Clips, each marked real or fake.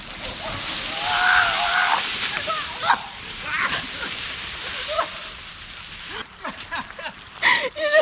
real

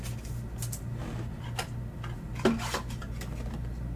real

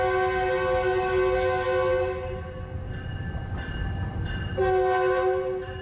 real